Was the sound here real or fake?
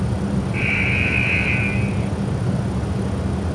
real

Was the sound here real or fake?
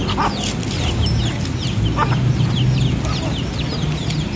real